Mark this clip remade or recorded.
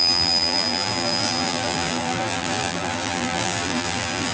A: remade